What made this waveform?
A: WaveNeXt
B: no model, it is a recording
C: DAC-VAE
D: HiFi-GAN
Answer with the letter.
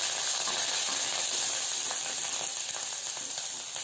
B